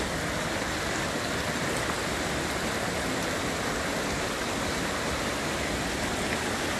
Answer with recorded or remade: recorded